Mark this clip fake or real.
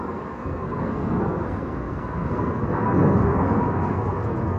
fake